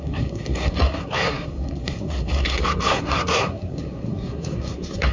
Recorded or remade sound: remade